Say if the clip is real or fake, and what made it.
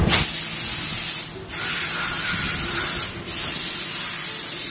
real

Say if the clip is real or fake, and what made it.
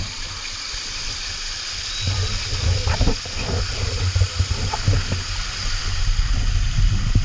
real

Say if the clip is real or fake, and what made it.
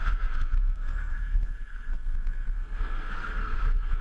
fake, codec, SNAC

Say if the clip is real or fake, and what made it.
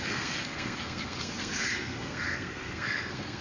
fake, codec, SNAC